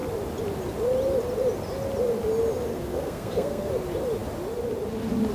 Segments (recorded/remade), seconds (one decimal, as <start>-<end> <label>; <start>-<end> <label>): 0.0-2.7 recorded; 2.7-3.7 remade; 3.7-5.3 recorded